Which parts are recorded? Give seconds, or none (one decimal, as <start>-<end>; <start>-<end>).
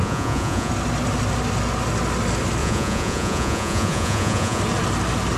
0.7-2.6; 4.6-5.4